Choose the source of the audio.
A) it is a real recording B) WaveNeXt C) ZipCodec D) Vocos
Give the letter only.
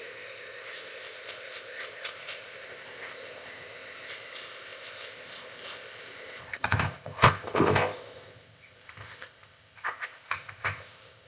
C